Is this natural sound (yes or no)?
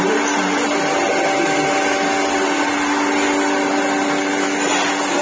yes